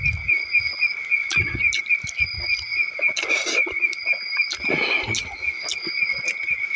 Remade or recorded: recorded